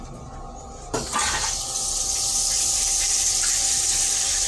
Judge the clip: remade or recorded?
recorded